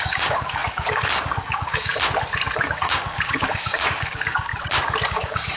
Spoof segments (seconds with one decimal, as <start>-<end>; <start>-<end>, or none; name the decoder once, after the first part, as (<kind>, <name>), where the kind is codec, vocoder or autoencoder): 0.0-1.9 (codec, DAC); 2.6-4.5; 5.1-5.6